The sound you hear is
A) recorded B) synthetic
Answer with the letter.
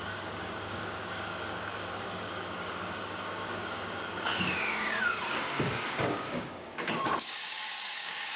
B